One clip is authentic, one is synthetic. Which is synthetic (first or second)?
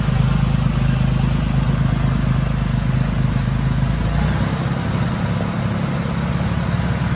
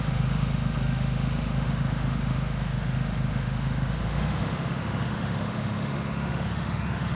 second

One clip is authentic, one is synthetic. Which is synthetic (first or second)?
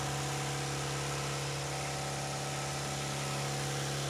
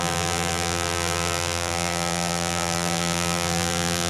second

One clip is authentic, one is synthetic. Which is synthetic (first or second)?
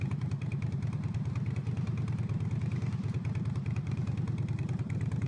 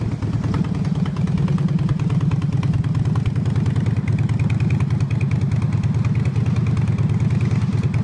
first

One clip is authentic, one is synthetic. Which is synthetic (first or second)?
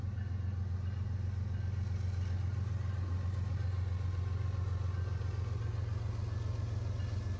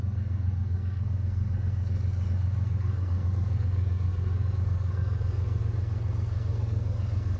second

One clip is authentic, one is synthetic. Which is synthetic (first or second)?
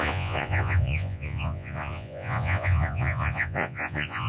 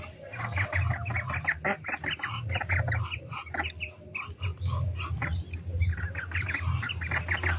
first